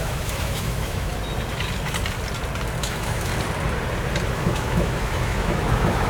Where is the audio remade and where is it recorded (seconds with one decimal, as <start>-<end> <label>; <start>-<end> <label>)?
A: 0.0-1.1 remade; 1.1-2.8 recorded; 2.8-3.3 remade; 3.3-4.3 recorded; 4.3-6.1 remade

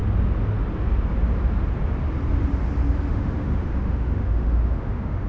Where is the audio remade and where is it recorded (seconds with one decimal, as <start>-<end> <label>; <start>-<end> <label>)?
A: 0.0-3.1 recorded; 3.1-5.3 remade

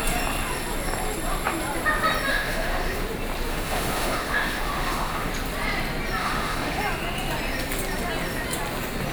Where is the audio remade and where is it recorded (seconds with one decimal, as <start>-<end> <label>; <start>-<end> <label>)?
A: 0.0-2.3 recorded; 2.3-3.0 remade; 3.0-3.5 recorded; 3.5-5.3 remade; 5.3-6.2 recorded; 6.2-6.8 remade; 6.8-9.1 recorded

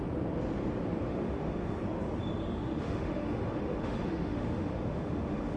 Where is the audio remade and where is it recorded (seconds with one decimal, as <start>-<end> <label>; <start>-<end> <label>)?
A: 0.0-1.1 recorded; 1.1-1.8 remade; 1.8-2.4 recorded; 2.4-5.6 remade

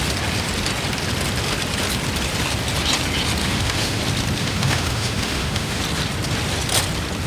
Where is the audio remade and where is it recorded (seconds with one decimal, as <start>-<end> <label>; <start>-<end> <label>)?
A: 0.0-3.4 recorded; 3.4-4.0 remade; 4.0-4.4 recorded; 4.4-5.8 remade; 5.8-7.3 recorded

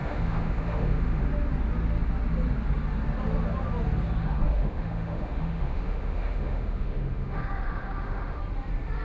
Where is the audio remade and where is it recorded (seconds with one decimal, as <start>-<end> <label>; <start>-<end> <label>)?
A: 0.0-1.2 remade; 1.2-4.2 recorded; 4.2-8.4 remade; 8.4-9.0 recorded